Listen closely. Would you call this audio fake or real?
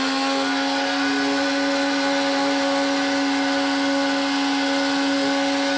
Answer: real